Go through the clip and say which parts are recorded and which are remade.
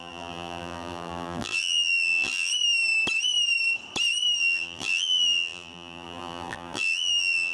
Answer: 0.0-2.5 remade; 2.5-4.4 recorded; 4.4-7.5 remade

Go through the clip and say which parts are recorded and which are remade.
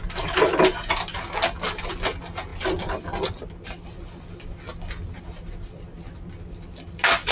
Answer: 0.0-7.3 recorded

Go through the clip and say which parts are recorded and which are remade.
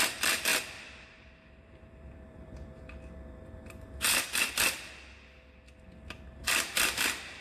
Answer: 0.0-0.5 recorded; 0.5-4.9 remade; 4.9-6.4 recorded; 6.4-7.4 remade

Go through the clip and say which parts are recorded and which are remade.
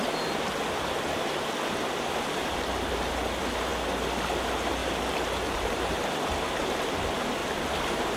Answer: 0.0-2.4 recorded; 2.4-3.1 remade; 3.1-4.8 recorded; 4.8-6.1 remade; 6.1-8.2 recorded